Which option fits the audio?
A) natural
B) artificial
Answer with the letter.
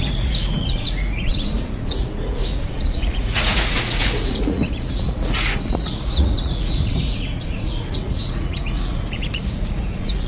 B